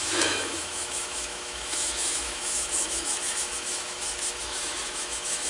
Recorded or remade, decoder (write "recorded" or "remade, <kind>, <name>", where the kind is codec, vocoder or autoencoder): remade, autoencoder, DAC-VAE